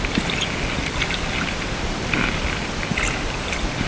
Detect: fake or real real